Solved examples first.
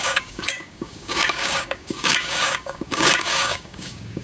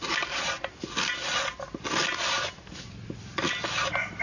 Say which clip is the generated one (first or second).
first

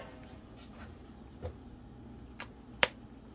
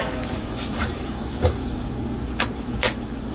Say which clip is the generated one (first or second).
second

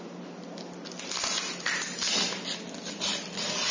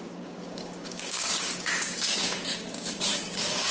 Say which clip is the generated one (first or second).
second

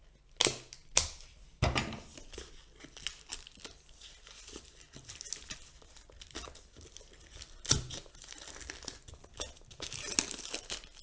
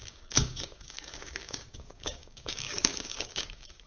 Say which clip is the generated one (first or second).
second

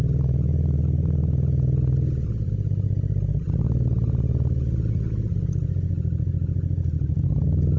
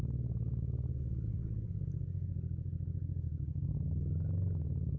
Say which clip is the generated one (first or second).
second